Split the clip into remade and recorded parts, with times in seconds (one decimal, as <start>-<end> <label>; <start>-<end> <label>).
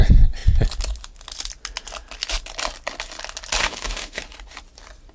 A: 0.0-3.6 recorded; 3.6-4.2 remade; 4.2-5.1 recorded